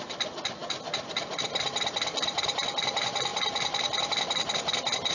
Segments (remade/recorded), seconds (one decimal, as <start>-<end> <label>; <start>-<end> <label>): 0.0-5.1 recorded